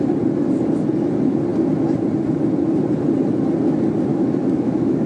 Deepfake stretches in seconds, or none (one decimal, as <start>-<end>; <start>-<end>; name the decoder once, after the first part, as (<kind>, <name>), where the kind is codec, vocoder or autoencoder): 4.1-5.1 (autoencoder, DAC-VAE)